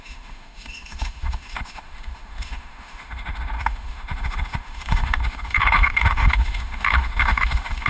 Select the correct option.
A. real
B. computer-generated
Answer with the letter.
B